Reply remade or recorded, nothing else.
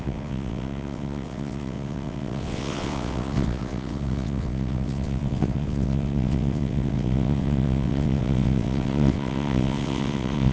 remade